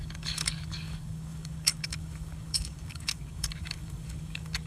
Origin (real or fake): fake